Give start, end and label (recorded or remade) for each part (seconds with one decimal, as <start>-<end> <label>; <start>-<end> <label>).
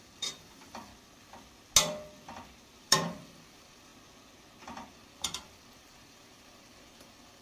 0.0-0.9 remade; 0.9-2.8 recorded; 2.8-3.9 remade; 3.9-4.9 recorded; 4.9-7.4 remade